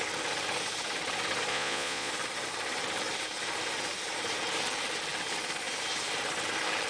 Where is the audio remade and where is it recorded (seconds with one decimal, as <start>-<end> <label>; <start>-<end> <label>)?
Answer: 0.0-1.5 recorded; 1.5-2.1 remade; 2.1-6.9 recorded